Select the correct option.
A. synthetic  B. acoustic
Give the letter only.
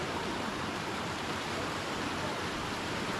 A